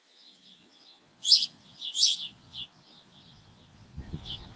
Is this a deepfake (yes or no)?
yes